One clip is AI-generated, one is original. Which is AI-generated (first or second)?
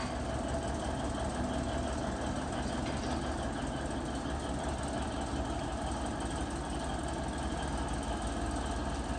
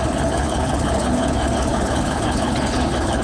second